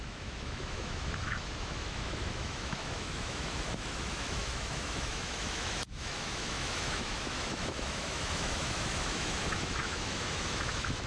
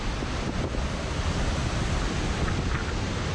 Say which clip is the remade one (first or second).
first